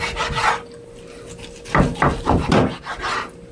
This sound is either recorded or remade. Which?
recorded